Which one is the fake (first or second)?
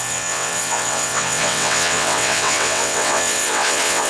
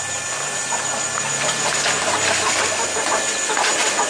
first